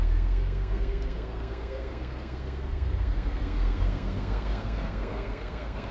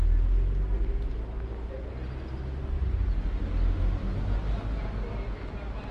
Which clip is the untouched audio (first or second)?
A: second